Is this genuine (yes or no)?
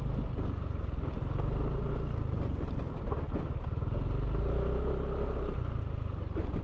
yes